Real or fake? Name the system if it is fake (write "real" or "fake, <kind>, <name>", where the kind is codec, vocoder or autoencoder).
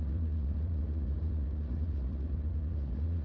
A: fake, vocoder, Vocos